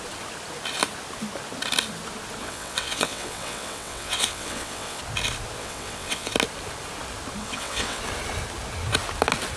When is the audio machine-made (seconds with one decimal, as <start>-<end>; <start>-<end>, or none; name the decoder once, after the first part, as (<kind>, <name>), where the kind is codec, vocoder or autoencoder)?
2.4-5.0 (vocoder, WaveNeXt); 5.6-6.3; 7.4-8.0